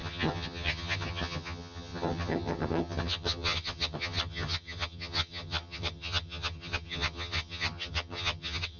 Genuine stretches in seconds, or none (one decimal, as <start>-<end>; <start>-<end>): none